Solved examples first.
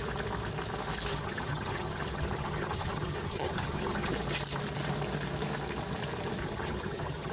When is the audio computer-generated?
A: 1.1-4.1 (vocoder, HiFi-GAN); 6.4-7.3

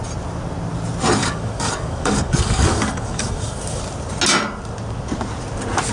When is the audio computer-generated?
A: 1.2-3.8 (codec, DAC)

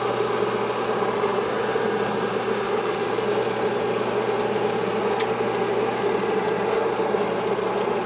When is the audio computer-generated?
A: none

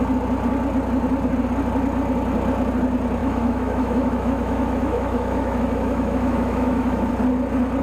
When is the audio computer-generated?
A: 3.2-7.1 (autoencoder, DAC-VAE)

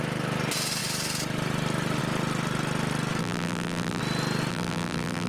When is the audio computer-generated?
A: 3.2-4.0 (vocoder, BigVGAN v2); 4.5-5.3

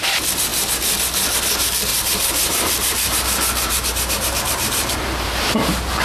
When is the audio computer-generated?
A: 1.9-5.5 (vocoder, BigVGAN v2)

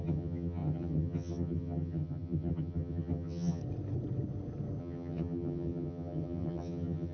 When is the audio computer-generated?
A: 0.0-3.6 (vocoder, HiFi-GAN); 4.8-7.1

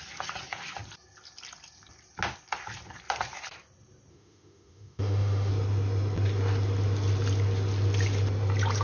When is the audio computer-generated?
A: 4.1-5.5 (autoencoder, DAC-VAE)